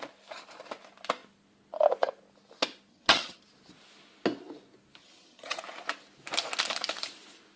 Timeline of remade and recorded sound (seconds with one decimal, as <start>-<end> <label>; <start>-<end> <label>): 0.0-2.9 recorded; 2.9-3.4 remade; 3.4-5.0 recorded; 5.0-5.6 remade; 5.6-7.6 recorded